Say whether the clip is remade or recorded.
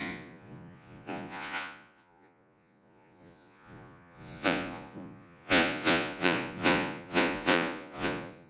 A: remade